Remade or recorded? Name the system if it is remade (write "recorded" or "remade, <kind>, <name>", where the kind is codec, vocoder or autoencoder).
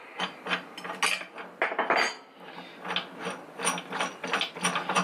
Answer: recorded